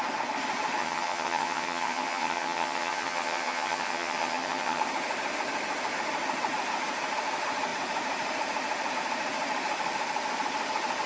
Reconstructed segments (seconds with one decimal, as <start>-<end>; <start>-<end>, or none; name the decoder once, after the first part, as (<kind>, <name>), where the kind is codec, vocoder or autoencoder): 0.8-4.8 (vocoder, HiFi-GAN)

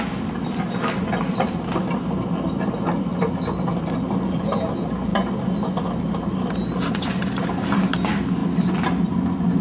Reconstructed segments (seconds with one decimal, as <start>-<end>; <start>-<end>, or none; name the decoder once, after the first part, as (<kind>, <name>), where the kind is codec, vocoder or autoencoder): none

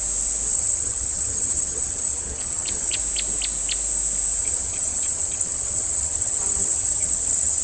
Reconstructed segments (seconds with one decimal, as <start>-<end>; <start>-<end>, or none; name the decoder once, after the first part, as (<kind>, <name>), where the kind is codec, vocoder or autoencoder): 0.5-3.0 (vocoder, HiFi-GAN); 4.4-7.6

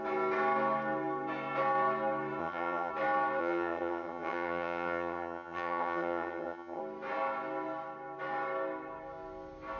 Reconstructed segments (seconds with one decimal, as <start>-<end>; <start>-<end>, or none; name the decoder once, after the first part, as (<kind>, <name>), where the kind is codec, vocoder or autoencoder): 2.4-2.9 (vocoder, HiFi-GAN); 3.4-6.8

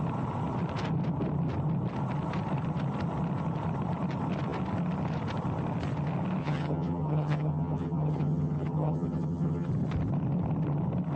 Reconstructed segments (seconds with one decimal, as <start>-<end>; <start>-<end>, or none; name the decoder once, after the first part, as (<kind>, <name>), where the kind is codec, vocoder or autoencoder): 6.4-9.7 (vocoder, HiFi-GAN)

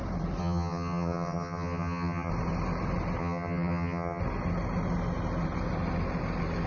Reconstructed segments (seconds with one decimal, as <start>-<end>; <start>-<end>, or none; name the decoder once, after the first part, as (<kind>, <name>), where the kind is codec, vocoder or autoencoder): 0.4-2.3 (vocoder, HiFi-GAN); 3.2-4.2